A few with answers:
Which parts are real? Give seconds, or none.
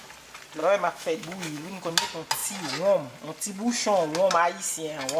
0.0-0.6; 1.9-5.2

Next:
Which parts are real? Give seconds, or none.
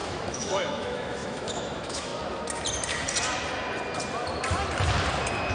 2.1-5.5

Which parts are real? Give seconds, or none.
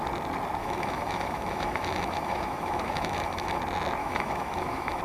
0.0-0.6; 3.6-4.0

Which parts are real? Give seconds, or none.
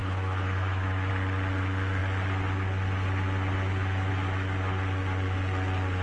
1.1-6.0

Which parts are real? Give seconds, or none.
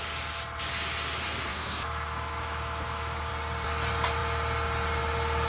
0.0-1.5; 3.3-5.5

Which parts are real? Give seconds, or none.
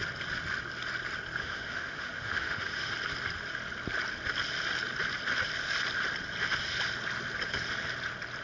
0.0-1.4; 2.9-8.4